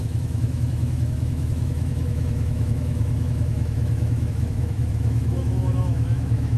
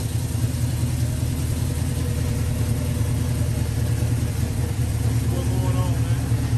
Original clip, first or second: second